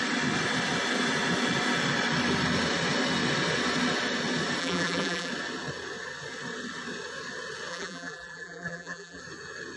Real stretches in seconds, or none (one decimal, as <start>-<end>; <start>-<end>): 0.0-4.6; 5.3-7.7; 9.2-9.8